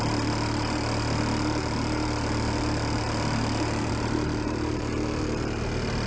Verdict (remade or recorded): recorded